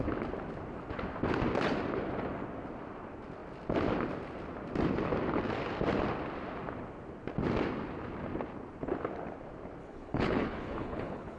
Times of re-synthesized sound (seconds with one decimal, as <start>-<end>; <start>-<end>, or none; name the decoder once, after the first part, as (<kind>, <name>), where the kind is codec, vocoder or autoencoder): 9.8-11.4 (codec, HILCodec)